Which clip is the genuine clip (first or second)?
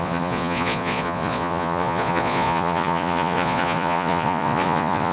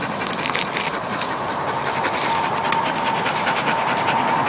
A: second